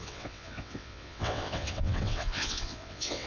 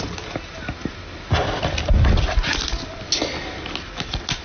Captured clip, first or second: second